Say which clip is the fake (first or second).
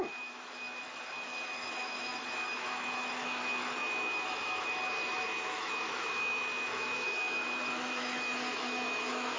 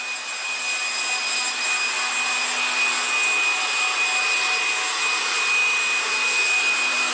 first